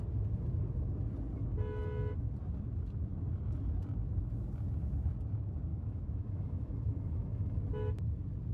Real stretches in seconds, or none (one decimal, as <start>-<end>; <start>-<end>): 0.0-5.7; 7.6-8.5